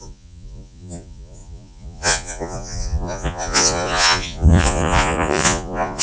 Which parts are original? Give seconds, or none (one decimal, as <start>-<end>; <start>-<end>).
none